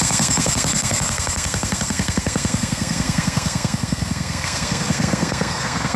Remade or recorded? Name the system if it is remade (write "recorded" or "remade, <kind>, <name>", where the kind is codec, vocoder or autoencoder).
remade, codec, SNAC